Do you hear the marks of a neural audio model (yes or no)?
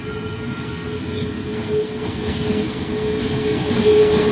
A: yes